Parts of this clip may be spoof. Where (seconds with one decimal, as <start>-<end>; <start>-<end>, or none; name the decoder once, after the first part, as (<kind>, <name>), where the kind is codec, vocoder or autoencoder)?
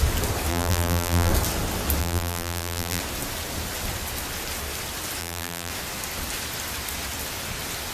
0.5-1.3 (vocoder, BigVGAN v2); 2.0-3.0; 5.2-5.7